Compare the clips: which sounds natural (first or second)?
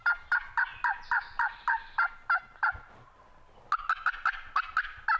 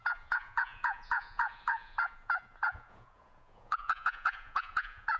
first